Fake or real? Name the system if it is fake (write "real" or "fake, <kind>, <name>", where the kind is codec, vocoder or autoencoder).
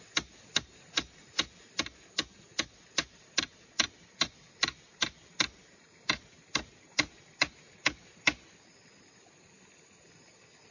real